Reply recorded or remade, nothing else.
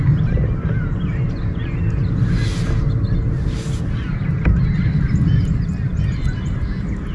recorded